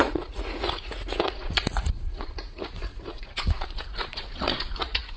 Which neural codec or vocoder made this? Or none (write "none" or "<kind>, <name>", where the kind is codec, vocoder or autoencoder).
vocoder, Vocos